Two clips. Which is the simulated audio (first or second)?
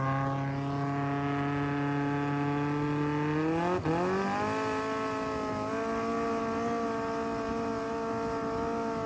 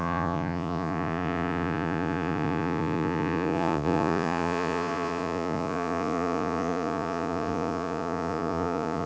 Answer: second